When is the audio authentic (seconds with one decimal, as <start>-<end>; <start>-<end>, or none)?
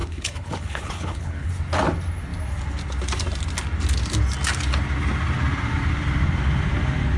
1.5-7.2